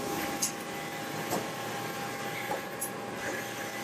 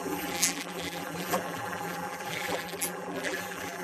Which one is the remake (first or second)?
second